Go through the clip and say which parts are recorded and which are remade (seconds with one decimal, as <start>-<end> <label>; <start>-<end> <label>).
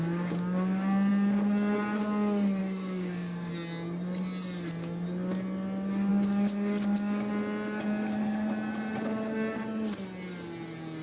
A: 0.0-2.6 recorded; 2.6-3.5 remade; 3.5-6.1 recorded; 6.1-7.3 remade; 7.3-11.0 recorded